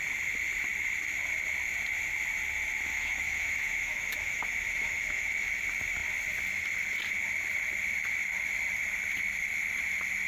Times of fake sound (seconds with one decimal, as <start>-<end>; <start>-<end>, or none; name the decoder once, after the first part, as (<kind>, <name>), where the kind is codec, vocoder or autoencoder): 2.9-5.3 (autoencoder, DAC-VAE)